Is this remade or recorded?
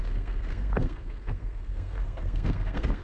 remade